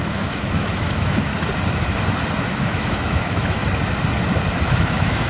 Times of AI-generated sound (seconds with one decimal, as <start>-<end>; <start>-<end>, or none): 0.0-1.3; 2.4-3.6; 4.7-5.3